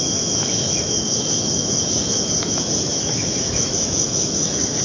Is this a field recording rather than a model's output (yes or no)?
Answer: no